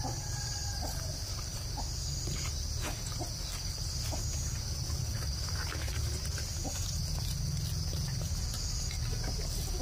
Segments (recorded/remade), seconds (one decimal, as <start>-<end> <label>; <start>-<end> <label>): 0.0-9.8 recorded